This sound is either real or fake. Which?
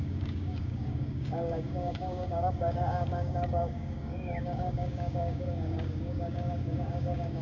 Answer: fake